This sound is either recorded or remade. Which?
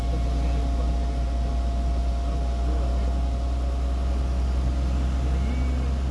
recorded